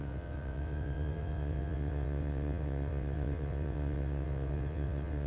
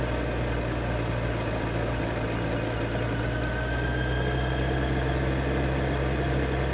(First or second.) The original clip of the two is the second